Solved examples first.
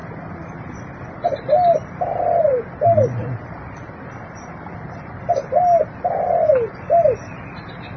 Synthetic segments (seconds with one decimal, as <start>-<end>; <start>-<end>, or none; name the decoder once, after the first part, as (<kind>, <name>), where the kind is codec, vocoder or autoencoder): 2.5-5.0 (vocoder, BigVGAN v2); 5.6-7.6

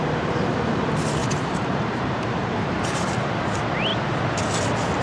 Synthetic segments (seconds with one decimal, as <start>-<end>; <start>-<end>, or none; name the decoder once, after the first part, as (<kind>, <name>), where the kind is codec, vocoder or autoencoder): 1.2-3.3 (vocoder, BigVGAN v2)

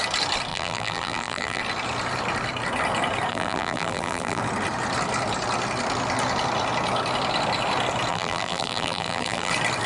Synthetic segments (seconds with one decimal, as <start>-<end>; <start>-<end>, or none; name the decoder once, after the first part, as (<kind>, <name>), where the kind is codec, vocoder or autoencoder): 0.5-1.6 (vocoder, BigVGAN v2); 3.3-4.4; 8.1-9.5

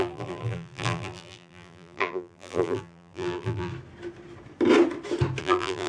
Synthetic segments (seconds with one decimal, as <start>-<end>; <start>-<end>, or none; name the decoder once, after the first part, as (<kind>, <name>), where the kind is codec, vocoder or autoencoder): 0.0-3.7 (vocoder, BigVGAN v2); 5.4-5.9

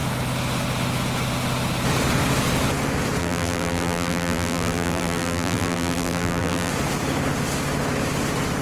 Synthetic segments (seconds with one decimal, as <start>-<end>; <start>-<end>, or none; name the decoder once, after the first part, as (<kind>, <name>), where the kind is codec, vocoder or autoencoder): 3.2-6.7 (vocoder, BigVGAN v2)